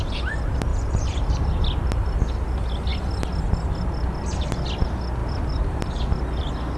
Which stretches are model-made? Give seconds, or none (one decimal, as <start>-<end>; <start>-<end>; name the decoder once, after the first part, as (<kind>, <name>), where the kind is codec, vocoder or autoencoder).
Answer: 0.7-1.6 (vocoder, BigVGAN v2); 5.2-5.8